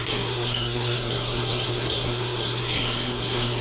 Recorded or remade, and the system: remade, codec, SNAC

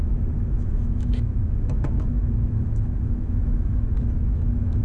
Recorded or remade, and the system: remade, autoencoder, DAC-VAE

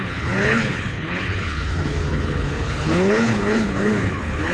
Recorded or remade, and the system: remade, codec, HILCodec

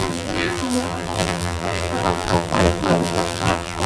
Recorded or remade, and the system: remade, vocoder, BigVGAN v2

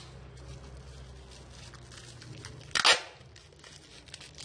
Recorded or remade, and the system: recorded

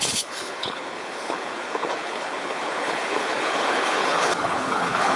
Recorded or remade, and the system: remade, codec, HILCodec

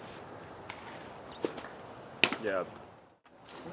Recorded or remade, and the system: recorded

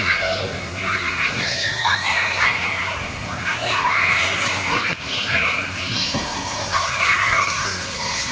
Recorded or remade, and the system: remade, codec, SNAC